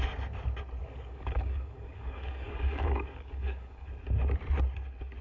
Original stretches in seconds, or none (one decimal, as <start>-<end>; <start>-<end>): 0.0-0.8; 3.9-5.2